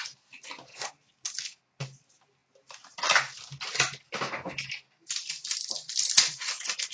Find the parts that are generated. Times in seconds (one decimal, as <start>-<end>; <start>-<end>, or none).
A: none